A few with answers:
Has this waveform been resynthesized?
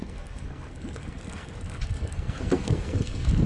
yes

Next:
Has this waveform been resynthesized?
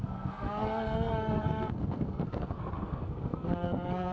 yes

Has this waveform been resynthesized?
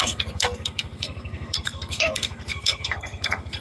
yes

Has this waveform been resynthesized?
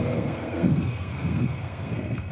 yes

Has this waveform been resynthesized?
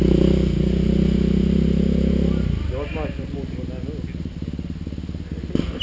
no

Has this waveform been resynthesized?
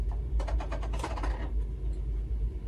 no